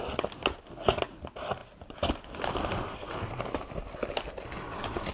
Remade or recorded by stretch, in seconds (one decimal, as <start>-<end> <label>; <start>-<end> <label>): 0.0-1.6 recorded; 1.6-5.1 remade